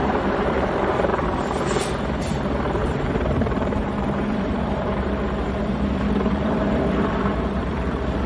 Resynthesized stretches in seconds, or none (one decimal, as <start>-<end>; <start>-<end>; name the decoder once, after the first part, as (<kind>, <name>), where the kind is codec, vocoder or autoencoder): 0.0-1.1 (vocoder, BigVGAN v2); 2.2-8.3